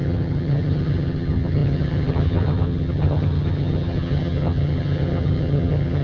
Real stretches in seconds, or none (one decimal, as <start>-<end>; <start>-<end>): none